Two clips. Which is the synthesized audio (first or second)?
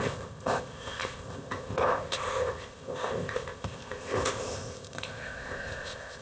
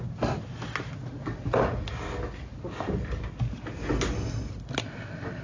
first